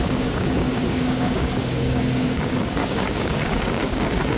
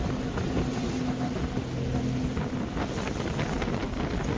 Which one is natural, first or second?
second